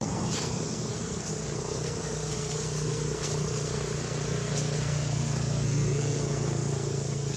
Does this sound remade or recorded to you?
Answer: remade